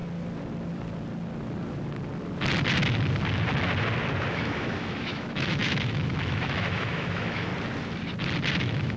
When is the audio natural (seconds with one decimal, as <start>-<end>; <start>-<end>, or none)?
0.0-4.3; 7.5-8.6